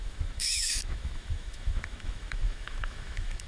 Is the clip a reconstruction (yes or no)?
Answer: yes